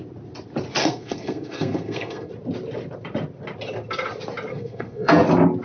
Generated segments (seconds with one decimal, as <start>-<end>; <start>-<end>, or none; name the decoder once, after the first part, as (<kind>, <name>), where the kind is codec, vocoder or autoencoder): 0.8-2.3 (codec, SNAC); 4.5-5.1